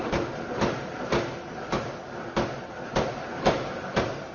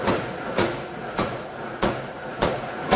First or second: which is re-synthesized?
second